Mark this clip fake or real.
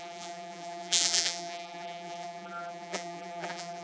fake